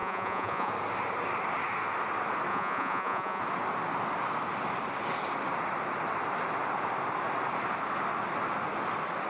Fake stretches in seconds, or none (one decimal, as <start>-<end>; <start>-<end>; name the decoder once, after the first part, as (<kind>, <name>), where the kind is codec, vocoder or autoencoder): 0.0-0.7 (vocoder, Vocos); 2.5-3.4